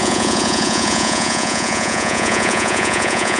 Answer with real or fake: fake